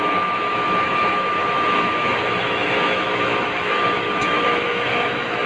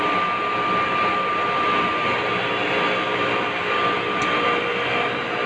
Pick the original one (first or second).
second